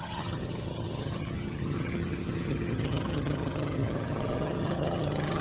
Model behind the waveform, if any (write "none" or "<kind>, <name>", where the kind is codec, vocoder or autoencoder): vocoder, HiFi-GAN